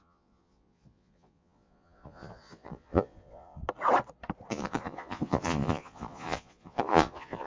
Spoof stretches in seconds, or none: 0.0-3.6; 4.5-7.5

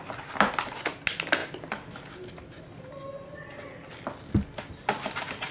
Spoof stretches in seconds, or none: none

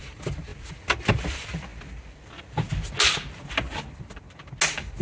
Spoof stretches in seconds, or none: none

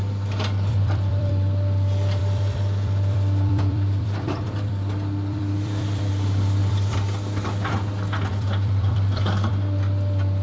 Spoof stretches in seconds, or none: 0.7-1.3; 2.2-6.1; 6.6-7.7; 8.3-9.5

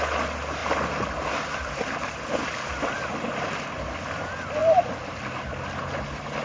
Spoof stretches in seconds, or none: none

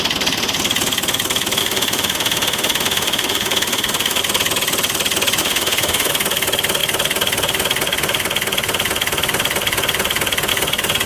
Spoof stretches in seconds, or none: 1.6-4.2; 5.4-6.1

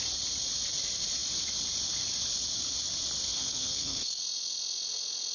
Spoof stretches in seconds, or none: 3.3-4.2